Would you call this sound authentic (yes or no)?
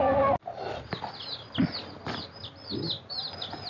yes